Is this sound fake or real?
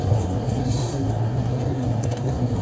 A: fake